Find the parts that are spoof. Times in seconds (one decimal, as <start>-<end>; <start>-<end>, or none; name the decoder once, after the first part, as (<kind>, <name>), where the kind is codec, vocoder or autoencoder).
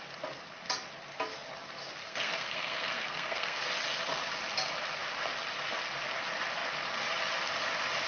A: 2.0-3.6 (codec, SNAC)